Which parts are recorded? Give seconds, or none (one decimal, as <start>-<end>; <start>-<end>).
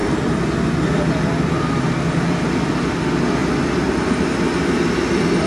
0.0-5.5